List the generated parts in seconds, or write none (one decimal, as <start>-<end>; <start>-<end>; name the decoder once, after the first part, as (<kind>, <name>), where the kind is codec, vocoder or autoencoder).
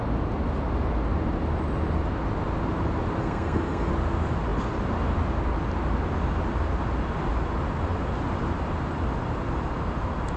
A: 3.2-3.9 (codec, SNAC)